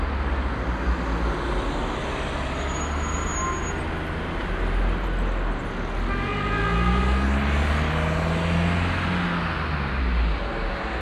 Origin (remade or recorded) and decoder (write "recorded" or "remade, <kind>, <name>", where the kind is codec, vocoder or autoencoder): recorded